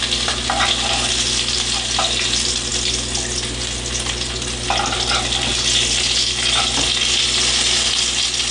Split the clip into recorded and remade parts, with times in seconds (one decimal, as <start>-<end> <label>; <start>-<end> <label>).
0.0-8.5 recorded